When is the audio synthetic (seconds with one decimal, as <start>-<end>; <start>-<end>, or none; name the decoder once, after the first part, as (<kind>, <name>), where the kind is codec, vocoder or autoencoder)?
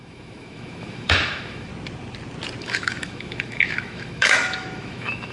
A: 0.0-1.7 (autoencoder, DAC-VAE); 2.6-5.3